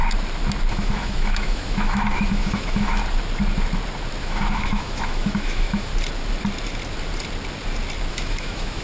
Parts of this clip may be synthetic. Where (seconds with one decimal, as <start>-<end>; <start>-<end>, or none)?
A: 0.7-3.0; 4.2-5.9; 8.1-8.8